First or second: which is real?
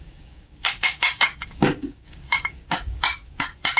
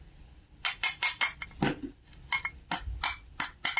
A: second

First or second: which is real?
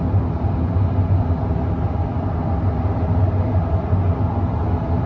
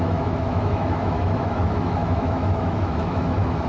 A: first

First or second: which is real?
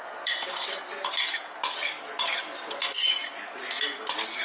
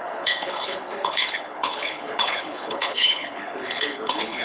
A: first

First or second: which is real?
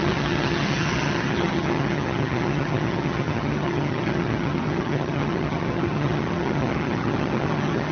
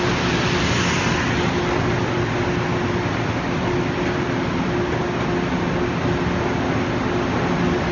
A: second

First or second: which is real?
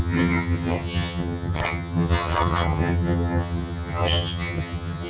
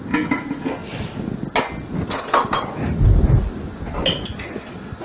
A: second